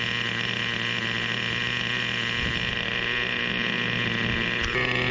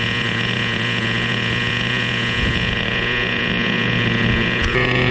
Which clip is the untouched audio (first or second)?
first